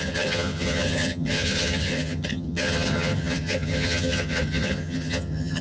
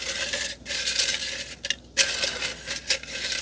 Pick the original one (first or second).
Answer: second